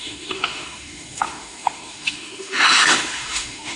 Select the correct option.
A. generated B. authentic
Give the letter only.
A